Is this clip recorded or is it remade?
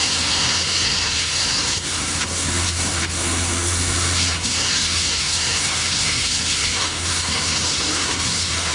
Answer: remade